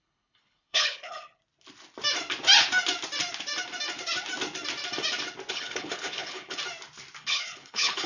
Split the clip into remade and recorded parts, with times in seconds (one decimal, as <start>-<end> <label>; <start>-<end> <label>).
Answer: 0.0-1.4 remade; 1.4-5.5 recorded; 5.5-6.6 remade; 6.6-7.2 recorded; 7.2-8.1 remade